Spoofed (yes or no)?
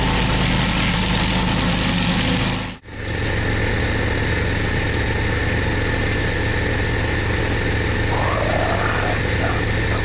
no